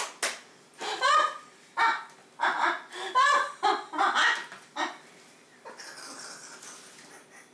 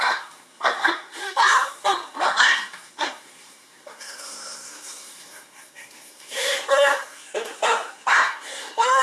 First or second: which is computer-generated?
second